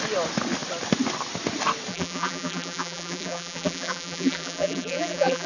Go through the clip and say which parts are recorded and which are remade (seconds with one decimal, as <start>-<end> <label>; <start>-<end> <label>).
0.0-1.9 recorded; 1.9-5.5 remade